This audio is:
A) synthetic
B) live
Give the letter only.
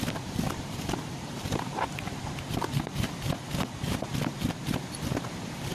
A